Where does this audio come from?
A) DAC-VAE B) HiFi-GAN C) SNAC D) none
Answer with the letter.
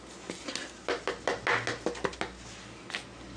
D